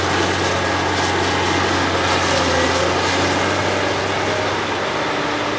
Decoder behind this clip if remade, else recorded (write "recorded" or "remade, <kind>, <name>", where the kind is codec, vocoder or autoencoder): recorded